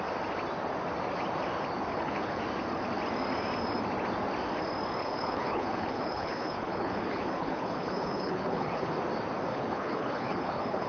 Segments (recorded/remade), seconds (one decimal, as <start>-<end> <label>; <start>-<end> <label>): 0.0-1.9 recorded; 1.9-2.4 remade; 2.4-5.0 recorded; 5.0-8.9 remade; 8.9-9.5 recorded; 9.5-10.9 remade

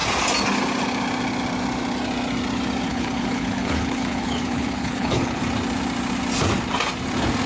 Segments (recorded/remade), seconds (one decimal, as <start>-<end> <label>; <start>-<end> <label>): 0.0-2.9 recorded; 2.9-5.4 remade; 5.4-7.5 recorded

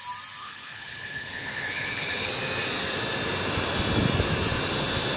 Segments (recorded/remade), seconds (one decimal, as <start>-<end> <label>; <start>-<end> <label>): 0.0-0.4 recorded; 0.4-2.3 remade; 2.3-5.2 recorded